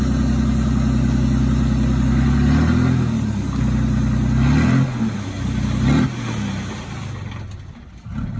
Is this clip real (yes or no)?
yes